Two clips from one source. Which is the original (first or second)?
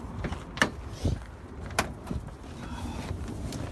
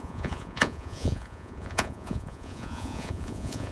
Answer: first